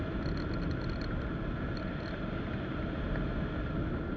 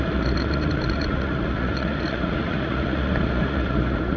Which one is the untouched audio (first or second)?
first